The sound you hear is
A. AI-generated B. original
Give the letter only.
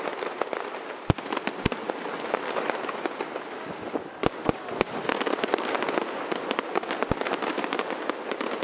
B